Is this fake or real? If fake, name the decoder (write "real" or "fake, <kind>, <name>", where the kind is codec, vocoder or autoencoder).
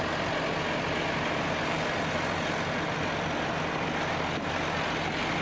real